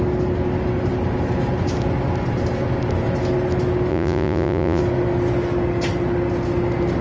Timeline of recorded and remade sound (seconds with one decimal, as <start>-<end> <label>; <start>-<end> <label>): 0.0-3.9 recorded; 3.9-4.8 remade; 4.8-7.0 recorded